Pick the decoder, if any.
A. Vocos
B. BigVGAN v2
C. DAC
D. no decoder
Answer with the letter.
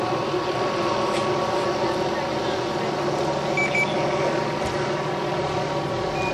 D